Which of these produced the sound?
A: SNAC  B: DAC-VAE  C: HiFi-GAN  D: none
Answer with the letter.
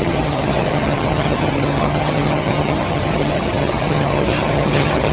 C